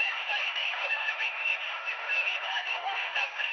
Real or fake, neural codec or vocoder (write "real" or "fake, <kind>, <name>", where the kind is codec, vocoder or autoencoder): fake, autoencoder, DAC-VAE